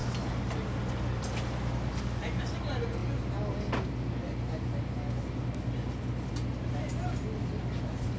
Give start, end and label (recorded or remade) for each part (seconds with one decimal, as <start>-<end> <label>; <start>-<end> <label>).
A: 0.0-8.2 recorded